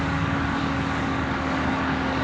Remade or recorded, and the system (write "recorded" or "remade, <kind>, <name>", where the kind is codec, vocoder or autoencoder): remade, codec, DAC